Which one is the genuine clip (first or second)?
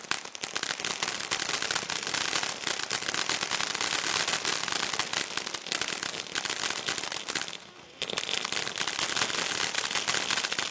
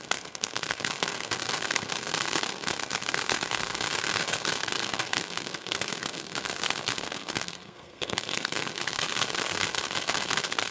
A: first